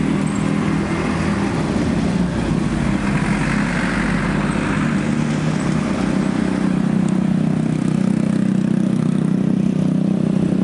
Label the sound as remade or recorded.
recorded